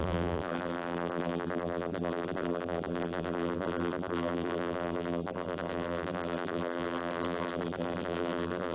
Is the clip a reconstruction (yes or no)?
yes